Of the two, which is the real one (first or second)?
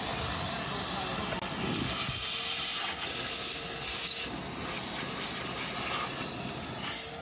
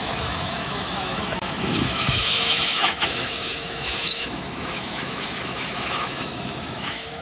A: first